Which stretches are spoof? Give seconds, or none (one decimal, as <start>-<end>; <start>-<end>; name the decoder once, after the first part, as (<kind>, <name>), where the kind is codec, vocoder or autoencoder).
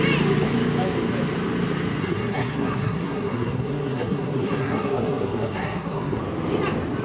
2.0-6.2 (codec, SNAC)